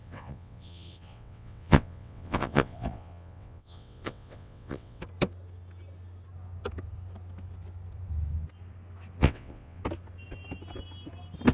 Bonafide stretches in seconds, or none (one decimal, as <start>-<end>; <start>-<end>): 5.0-9.2; 9.8-11.5